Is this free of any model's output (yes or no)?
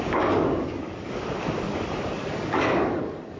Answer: no